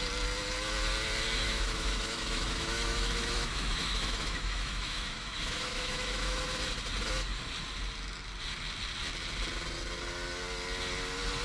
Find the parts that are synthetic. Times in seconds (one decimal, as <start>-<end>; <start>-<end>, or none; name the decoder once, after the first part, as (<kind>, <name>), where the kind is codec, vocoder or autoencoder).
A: 1.4-6.4 (autoencoder, DAC-VAE)